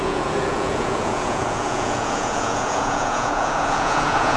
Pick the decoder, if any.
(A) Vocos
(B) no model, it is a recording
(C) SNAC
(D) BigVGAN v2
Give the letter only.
A